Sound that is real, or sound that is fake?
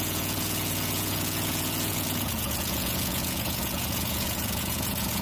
fake